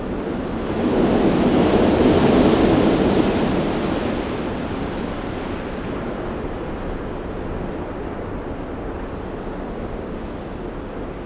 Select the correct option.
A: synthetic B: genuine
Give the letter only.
B